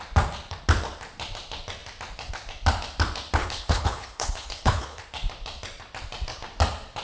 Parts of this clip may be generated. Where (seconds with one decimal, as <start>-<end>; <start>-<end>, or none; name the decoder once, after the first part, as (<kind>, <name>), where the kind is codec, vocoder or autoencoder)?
3.4-5.0 (codec, HILCodec)